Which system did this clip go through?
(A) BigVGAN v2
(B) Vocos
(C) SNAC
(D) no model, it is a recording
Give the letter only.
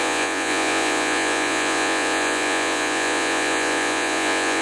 B